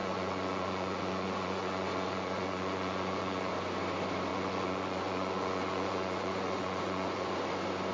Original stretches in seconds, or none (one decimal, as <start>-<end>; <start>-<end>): 3.5-4.3; 7.4-7.9

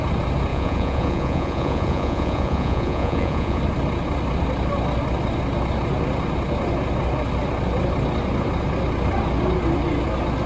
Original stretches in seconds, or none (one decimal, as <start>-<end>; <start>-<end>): 0.0-0.5; 3.6-10.5

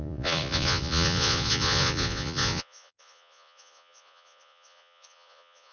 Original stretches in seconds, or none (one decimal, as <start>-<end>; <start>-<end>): none

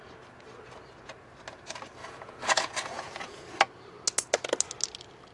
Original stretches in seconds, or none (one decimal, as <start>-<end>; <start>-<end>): 0.0-2.0; 3.4-5.3

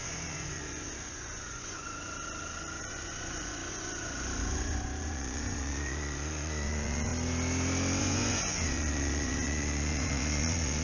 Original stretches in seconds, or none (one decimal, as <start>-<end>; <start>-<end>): 7.1-8.0